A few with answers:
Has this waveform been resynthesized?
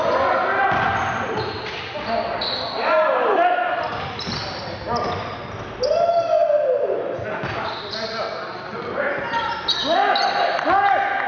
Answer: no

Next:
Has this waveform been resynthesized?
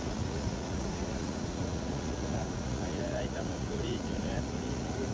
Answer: yes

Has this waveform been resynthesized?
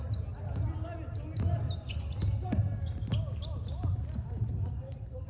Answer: no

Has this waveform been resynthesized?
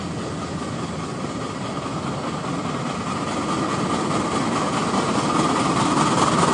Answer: no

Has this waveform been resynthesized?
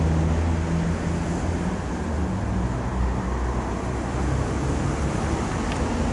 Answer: no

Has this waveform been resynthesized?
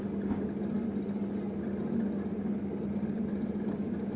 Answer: no